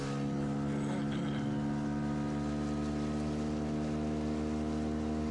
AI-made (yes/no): no